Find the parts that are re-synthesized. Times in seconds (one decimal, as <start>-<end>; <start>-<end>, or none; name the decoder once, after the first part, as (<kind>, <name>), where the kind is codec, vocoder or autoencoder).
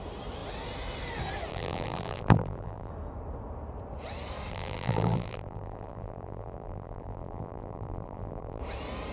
1.5-2.9 (vocoder, BigVGAN v2); 4.5-8.6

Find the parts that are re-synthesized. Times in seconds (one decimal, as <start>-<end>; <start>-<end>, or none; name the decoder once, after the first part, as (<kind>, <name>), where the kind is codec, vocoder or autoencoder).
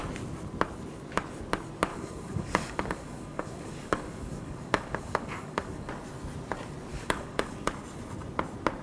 1.9-5.9 (codec, DAC); 6.9-7.5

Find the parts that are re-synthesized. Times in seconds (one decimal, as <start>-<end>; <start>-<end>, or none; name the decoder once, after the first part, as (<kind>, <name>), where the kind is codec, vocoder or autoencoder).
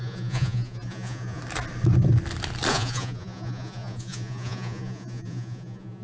0.0-1.4 (vocoder, Vocos); 2.7-6.0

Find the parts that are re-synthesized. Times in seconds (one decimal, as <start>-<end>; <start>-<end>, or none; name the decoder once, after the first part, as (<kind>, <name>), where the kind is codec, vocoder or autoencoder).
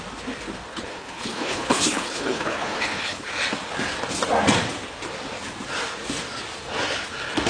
0.7-3.3 (codec, HILCodec)